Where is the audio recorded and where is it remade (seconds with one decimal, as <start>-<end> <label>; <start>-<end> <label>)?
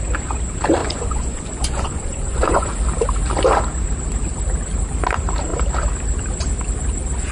0.0-0.8 recorded; 0.8-2.7 remade; 2.7-7.3 recorded